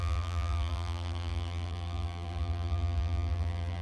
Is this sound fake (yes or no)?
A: yes